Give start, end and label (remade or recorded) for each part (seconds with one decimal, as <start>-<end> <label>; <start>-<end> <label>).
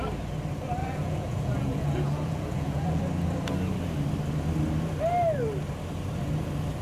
0.0-0.8 recorded; 0.8-3.0 remade; 3.0-6.8 recorded